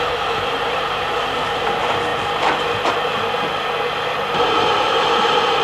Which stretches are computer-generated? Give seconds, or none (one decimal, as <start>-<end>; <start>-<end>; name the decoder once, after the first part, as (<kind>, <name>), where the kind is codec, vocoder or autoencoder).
0.0-5.6 (vocoder, BigVGAN v2)